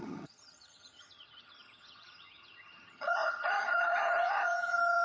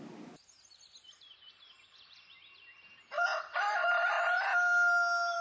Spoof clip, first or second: first